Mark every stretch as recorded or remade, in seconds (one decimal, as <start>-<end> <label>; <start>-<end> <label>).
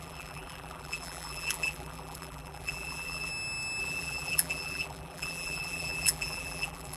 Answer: 0.0-3.3 remade; 3.3-3.8 recorded; 3.8-7.0 remade